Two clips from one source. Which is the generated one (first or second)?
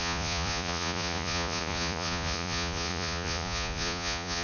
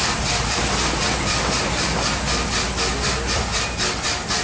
first